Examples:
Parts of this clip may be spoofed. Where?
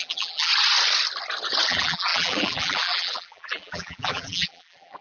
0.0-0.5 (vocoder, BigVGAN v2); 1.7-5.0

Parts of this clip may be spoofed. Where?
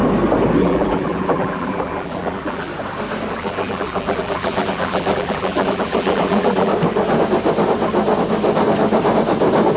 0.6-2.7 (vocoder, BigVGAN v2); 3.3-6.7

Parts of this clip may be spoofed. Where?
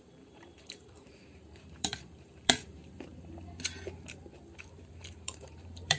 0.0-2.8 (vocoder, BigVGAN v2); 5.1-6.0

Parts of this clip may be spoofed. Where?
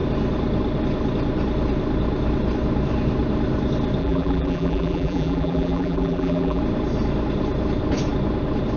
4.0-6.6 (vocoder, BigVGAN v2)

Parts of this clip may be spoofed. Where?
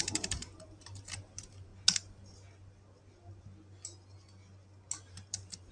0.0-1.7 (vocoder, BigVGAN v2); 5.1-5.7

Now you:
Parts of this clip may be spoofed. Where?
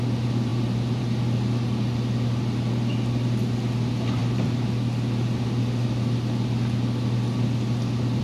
0.5-1.0 (vocoder, BigVGAN v2)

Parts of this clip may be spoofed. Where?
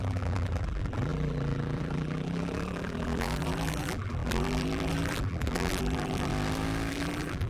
0.0-6.3 (vocoder, BigVGAN v2); 6.9-7.5